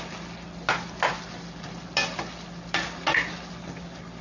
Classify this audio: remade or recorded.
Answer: recorded